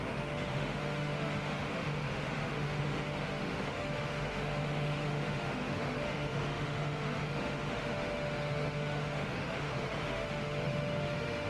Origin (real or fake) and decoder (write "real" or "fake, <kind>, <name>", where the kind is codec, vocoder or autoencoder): fake, autoencoder, DAC-VAE